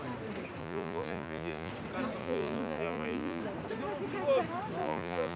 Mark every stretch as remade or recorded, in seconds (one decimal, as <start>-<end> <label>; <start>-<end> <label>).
0.0-0.6 recorded; 0.6-1.7 remade; 1.7-2.2 recorded; 2.2-3.4 remade; 3.4-4.8 recorded; 4.8-5.4 remade